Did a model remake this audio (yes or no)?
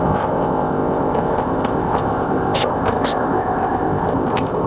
yes